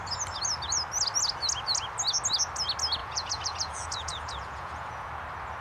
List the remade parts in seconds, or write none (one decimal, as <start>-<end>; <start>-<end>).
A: 3.0-5.1

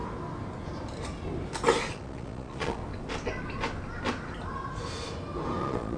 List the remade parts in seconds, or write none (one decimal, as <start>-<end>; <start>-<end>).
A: 1.9-2.8; 5.6-6.0